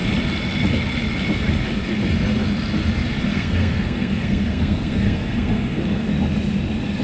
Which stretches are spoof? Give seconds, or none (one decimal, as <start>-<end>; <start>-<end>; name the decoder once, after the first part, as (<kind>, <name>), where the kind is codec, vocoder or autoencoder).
3.3-6.1 (codec, SNAC)